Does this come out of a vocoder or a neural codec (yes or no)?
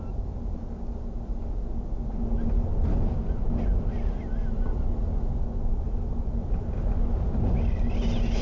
no